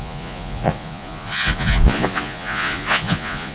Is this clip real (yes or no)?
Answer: no